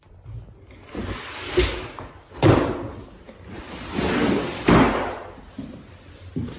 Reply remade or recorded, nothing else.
recorded